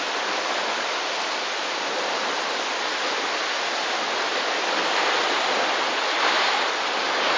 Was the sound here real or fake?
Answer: real